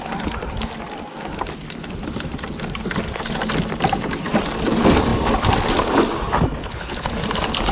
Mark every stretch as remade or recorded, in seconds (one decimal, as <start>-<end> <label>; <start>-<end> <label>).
0.0-6.6 recorded; 6.6-7.1 remade; 7.1-7.7 recorded